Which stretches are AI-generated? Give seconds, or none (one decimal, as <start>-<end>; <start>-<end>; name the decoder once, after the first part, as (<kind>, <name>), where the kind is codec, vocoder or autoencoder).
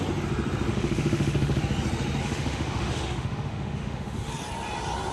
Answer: 0.7-1.6 (autoencoder, DAC-VAE); 2.2-4.3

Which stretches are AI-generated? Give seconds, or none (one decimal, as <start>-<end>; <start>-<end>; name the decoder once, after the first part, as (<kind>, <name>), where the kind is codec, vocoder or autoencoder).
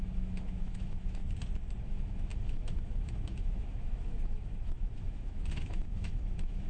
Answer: 0.0-1.2 (autoencoder, DAC-VAE); 1.8-6.7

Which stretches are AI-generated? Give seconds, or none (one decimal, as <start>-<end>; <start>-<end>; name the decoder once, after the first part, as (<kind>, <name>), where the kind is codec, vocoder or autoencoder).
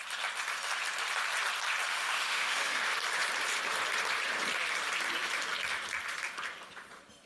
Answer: 1.9-2.8 (autoencoder, DAC-VAE)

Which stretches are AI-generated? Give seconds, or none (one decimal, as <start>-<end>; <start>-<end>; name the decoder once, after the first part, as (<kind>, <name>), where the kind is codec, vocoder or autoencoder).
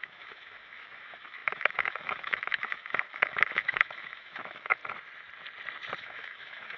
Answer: 0.0-4.8 (autoencoder, DAC-VAE); 6.0-6.8